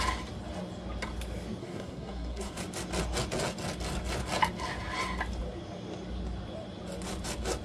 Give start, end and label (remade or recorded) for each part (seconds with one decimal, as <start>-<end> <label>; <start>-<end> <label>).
0.0-1.6 recorded; 1.6-2.6 remade; 2.6-7.6 recorded